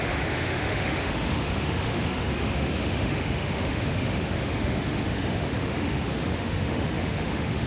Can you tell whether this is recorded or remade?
remade